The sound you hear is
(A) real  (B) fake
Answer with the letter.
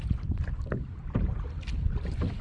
A